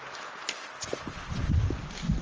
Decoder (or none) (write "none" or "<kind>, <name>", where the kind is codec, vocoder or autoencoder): none